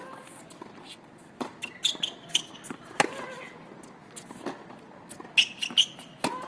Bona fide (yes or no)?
yes